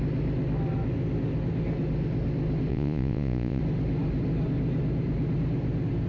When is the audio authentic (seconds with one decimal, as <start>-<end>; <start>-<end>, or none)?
0.0-2.7; 3.6-6.1